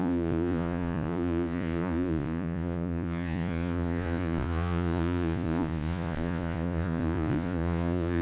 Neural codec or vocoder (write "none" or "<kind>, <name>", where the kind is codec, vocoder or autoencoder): vocoder, Vocos